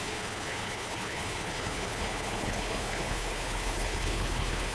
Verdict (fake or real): fake